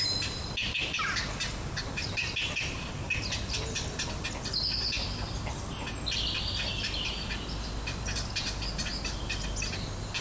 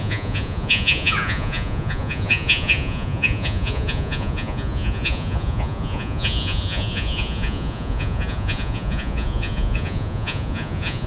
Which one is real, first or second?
first